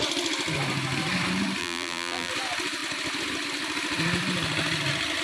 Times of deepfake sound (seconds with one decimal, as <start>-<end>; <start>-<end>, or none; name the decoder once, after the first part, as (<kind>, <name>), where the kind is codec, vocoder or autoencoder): 1.6-2.3 (vocoder, BigVGAN v2)